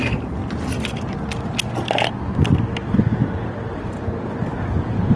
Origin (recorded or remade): recorded